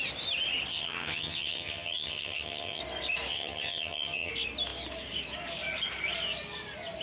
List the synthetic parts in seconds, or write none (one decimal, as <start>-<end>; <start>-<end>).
0.7-2.8; 3.3-4.3